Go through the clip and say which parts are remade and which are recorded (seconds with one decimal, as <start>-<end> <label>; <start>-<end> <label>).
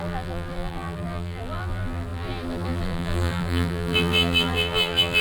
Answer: 0.0-5.2 remade